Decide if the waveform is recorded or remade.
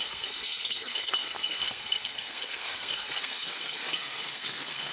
remade